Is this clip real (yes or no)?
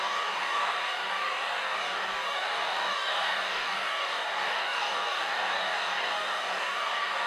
no